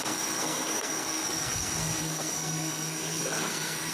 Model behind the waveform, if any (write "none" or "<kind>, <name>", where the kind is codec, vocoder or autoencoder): codec, SNAC